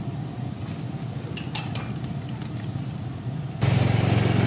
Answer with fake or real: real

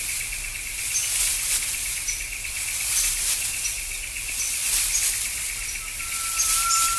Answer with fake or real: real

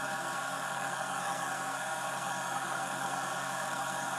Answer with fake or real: fake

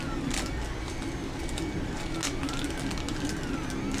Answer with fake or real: real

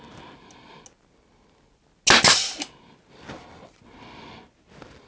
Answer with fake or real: real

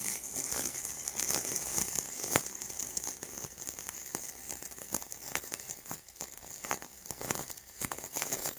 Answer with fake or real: fake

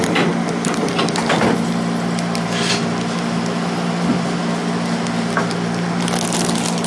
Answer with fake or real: real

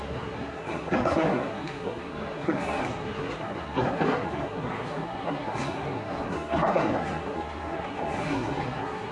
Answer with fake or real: fake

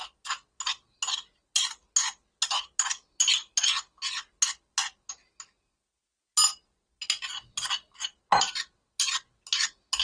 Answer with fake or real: real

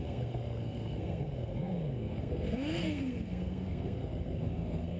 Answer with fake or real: fake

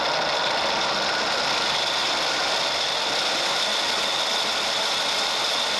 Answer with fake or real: real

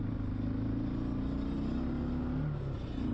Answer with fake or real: real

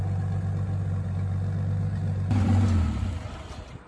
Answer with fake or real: real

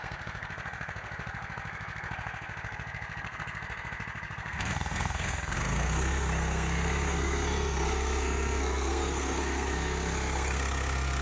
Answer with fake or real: fake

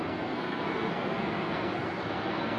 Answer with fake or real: fake